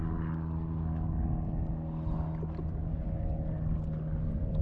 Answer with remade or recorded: recorded